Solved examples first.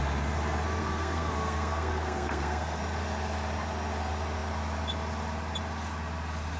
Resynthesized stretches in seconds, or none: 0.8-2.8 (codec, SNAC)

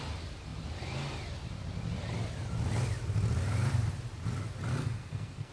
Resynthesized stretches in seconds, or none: 4.7-5.5 (codec, SNAC)

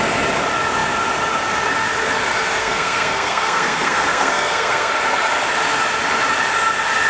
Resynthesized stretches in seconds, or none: 2.6-4.9 (codec, SNAC)

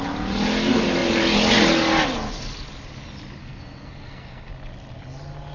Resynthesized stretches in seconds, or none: 3.4-4.5 (codec, SNAC)

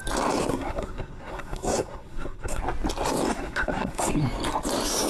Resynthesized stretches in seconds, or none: 0.5-2.6 (codec, SNAC); 3.3-4.1

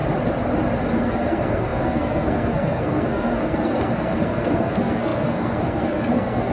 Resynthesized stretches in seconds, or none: 0.9-6.5 (codec, SNAC)

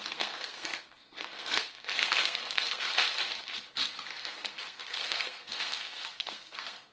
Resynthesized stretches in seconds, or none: 0.0-2.9 (codec, SNAC); 4.2-6.9

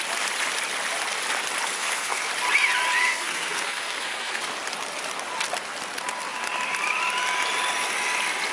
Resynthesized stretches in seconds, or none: 1.8-2.3 (codec, SNAC); 3.0-4.4